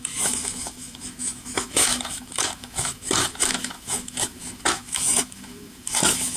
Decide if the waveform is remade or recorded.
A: remade